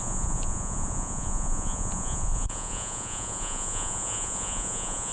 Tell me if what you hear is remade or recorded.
remade